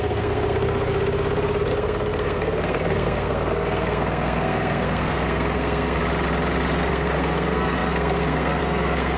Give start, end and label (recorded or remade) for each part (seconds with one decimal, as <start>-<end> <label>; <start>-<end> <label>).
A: 0.0-0.9 remade; 0.9-1.6 recorded; 1.6-6.0 remade; 6.0-6.9 recorded; 6.9-9.2 remade